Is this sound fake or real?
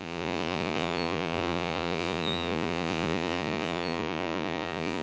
fake